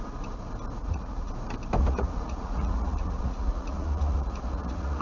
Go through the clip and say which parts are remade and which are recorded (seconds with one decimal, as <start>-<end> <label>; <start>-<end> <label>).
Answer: 0.0-0.8 recorded; 0.8-1.3 remade; 1.3-1.8 recorded; 1.8-5.0 remade